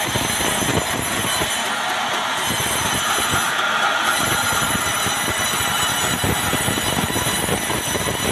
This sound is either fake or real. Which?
real